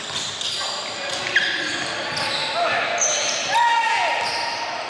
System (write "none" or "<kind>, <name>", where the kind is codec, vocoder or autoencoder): none